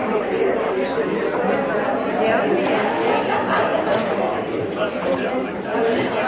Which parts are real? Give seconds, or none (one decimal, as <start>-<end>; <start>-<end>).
0.7-3.7; 5.3-5.7